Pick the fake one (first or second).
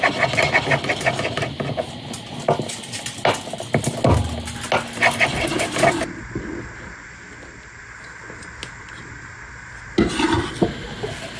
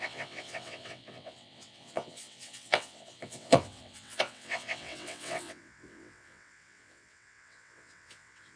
second